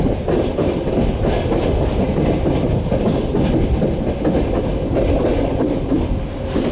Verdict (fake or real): real